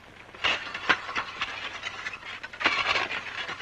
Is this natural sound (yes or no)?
yes